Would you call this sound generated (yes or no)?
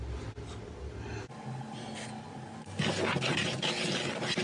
no